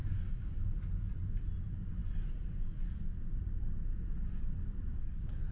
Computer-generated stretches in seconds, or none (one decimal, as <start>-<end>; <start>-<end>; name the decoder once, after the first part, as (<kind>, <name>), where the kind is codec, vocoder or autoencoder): 0.0-1.1 (codec, DAC)